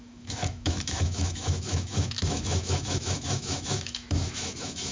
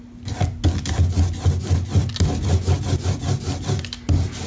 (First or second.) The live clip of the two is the second